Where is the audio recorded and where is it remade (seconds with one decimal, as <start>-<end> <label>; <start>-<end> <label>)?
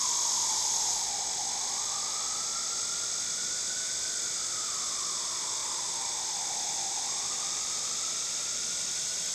0.0-9.3 recorded